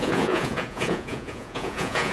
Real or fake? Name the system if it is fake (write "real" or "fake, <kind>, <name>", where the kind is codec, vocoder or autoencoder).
fake, vocoder, Vocos